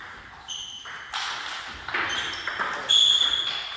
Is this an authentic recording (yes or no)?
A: yes